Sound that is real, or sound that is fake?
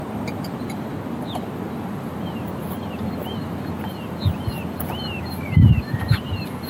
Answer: real